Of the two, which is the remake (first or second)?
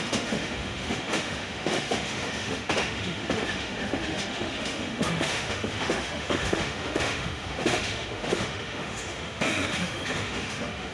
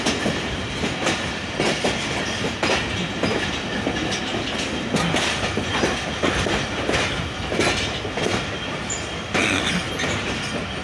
first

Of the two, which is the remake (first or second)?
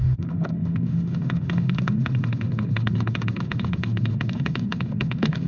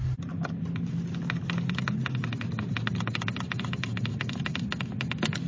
first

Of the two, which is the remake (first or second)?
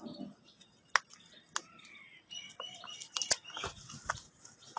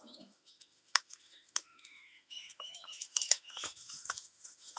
second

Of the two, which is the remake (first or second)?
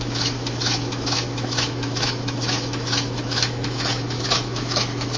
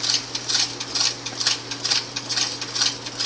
first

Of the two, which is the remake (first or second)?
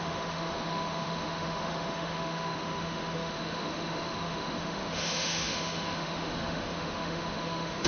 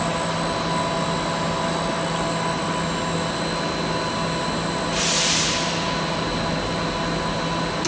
first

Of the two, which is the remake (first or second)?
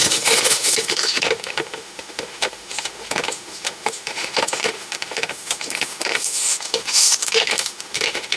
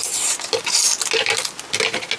first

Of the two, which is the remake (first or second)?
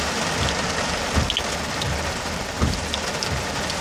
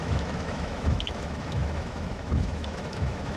second